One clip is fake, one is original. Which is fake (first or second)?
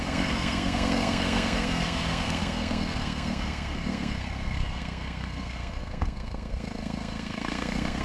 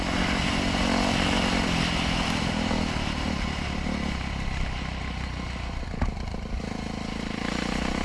first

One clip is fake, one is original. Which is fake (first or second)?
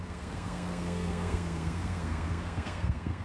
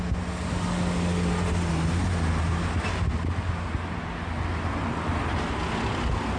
first